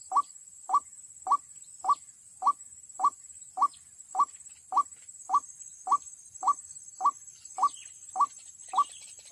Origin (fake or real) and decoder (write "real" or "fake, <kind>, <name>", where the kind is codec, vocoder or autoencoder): real